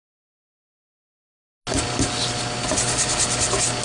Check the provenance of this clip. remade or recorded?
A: recorded